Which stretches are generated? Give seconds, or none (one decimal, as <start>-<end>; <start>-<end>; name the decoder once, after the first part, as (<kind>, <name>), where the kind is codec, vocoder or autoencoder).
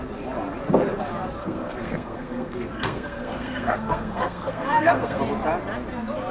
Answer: 1.4-5.2 (codec, SNAC)